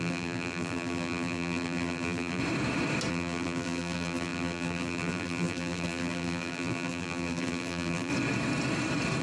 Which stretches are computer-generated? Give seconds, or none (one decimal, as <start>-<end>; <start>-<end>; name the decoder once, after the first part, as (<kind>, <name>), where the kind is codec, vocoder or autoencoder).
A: 0.0-2.4 (vocoder, BigVGAN v2); 3.1-8.1